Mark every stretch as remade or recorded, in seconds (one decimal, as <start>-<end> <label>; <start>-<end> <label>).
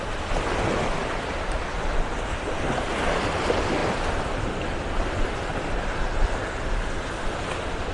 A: 0.0-7.9 recorded